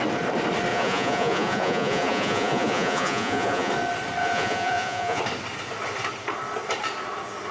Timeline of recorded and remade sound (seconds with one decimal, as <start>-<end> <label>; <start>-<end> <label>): 0.0-0.7 recorded; 0.7-3.7 remade; 3.7-4.2 recorded; 4.2-5.2 remade; 5.2-7.5 recorded